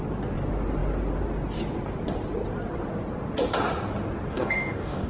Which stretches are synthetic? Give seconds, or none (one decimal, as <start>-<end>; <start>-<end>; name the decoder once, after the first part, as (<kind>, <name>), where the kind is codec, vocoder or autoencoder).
4.3-5.1 (codec, DAC)